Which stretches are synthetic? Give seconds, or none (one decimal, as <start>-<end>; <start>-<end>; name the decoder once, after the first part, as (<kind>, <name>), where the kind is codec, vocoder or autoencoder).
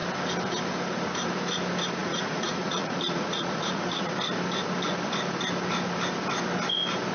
2.0-4.1 (vocoder, Vocos)